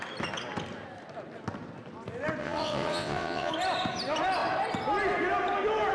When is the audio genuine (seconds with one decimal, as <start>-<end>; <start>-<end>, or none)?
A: 0.0-2.4; 3.5-5.9